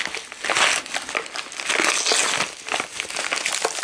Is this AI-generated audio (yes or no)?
no